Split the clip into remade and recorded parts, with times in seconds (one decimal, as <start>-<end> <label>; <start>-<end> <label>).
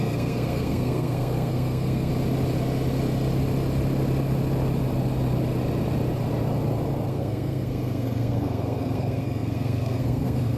0.0-2.1 remade; 2.1-7.1 recorded; 7.1-10.6 remade